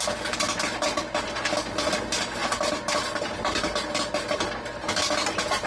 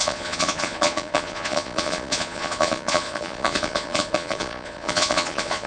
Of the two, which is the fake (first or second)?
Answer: second